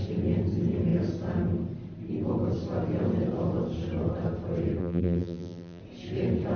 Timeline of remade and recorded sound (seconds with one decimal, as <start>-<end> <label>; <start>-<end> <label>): 0.0-4.8 recorded; 4.8-5.8 remade; 5.8-6.6 recorded